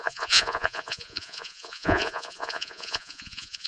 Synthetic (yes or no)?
yes